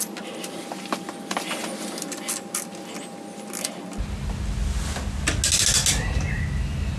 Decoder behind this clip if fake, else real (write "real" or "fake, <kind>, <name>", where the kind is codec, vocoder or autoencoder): real